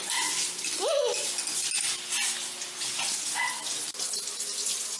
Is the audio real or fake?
real